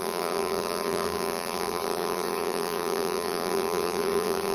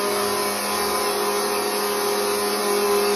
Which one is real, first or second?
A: second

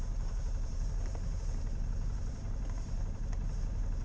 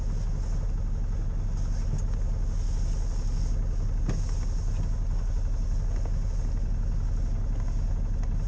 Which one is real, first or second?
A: second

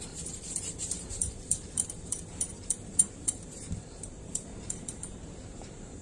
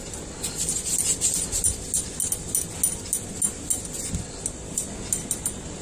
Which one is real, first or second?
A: second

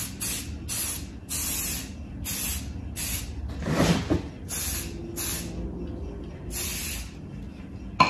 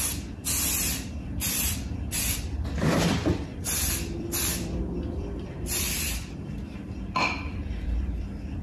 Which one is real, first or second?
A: first